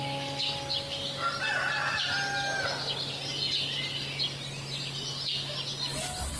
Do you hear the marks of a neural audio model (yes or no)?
no